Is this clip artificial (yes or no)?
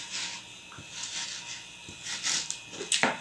no